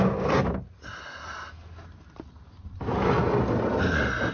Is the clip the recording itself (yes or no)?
yes